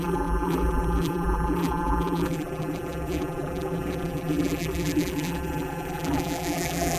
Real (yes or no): no